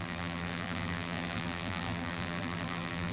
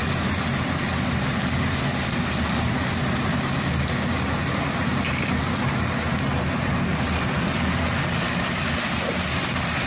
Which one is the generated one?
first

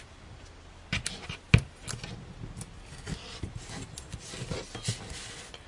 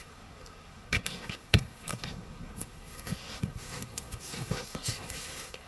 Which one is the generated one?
second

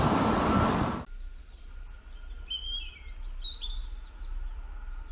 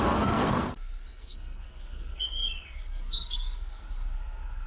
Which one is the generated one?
second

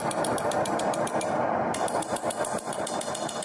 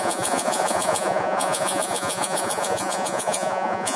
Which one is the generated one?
second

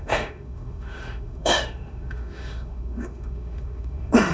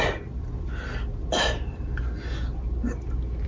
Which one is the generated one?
first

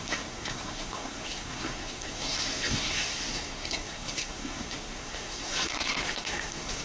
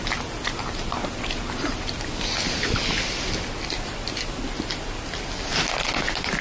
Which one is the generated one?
first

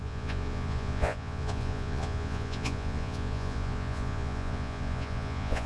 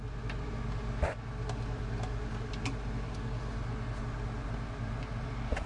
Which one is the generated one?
first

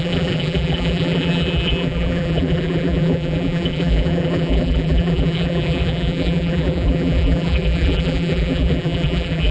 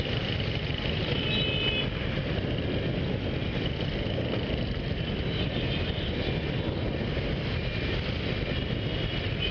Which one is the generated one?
first